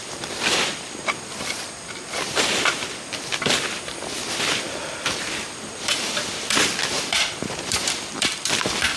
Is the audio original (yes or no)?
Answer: no